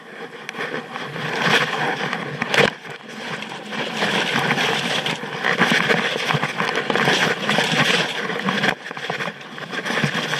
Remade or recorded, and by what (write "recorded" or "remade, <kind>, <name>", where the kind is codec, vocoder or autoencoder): recorded